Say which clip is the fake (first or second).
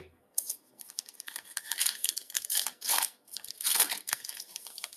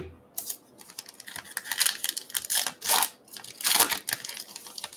first